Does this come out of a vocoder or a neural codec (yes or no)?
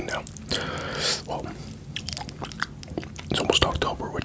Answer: no